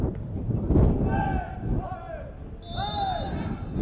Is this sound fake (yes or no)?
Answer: no